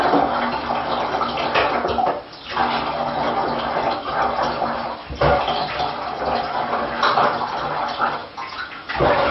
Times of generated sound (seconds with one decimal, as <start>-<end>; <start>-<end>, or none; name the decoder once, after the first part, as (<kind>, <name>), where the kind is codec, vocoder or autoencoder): 8.2-8.9 (vocoder, Vocos)